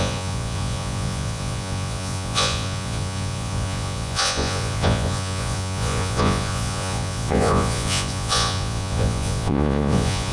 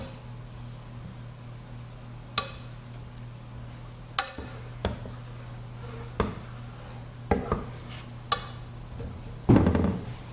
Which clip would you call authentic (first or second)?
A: second